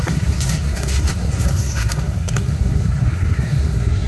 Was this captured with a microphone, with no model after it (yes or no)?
no